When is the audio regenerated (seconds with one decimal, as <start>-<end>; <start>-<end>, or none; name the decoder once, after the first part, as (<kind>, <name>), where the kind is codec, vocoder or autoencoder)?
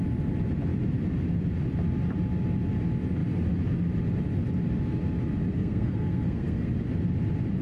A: 5.5-6.7 (codec, SNAC)